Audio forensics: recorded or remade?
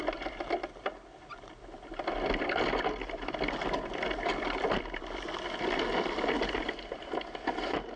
recorded